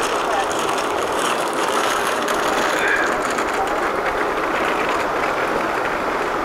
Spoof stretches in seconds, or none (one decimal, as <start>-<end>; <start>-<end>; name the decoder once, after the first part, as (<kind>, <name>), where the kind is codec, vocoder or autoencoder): 0.5-2.4 (codec, DAC)